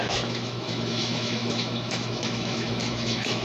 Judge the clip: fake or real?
fake